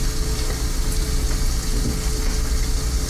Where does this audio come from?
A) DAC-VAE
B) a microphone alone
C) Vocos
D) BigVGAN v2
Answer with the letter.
B